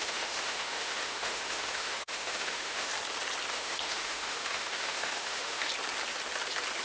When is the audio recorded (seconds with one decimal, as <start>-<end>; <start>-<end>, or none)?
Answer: 2.9-3.5; 5.7-6.8